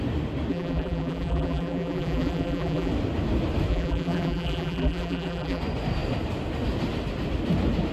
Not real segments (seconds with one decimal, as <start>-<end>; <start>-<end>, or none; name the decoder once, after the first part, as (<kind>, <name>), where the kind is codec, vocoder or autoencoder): 0.5-2.9 (vocoder, BigVGAN v2); 3.7-5.6